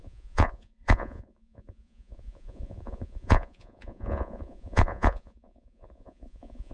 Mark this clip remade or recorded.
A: remade